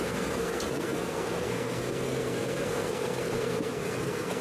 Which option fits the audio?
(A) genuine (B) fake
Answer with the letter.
B